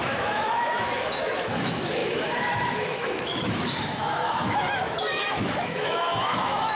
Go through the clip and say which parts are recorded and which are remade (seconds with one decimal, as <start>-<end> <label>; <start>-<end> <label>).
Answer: 0.0-6.8 remade